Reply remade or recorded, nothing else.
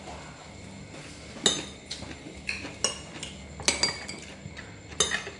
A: recorded